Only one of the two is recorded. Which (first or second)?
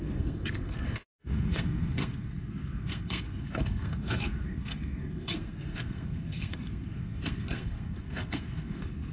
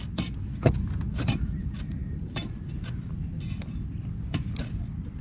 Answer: second